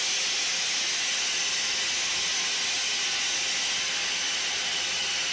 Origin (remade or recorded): recorded